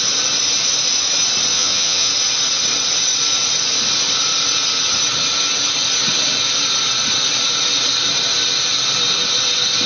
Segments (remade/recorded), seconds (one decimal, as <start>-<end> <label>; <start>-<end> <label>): 0.0-1.5 recorded; 1.5-2.1 remade; 2.1-9.9 recorded